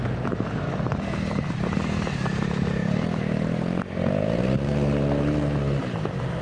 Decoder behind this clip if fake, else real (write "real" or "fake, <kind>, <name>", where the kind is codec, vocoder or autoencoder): real